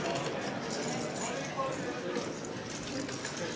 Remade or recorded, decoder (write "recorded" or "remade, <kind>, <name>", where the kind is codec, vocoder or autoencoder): recorded